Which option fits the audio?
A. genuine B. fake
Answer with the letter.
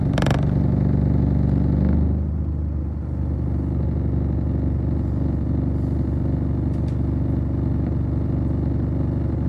A